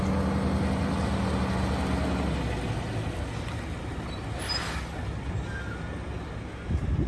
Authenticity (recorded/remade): recorded